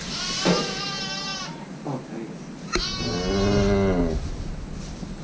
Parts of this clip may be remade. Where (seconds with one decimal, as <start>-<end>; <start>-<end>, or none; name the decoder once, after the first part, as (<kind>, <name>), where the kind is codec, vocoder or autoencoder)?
none